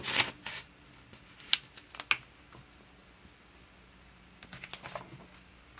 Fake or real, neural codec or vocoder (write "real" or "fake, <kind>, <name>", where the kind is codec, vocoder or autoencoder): real